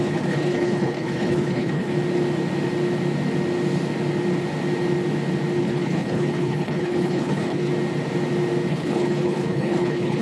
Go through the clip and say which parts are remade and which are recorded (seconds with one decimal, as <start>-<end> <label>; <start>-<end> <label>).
0.0-1.9 remade; 1.9-5.6 recorded; 5.6-7.7 remade; 7.7-8.7 recorded; 8.7-10.2 remade